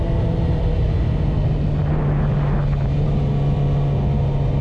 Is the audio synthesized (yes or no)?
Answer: no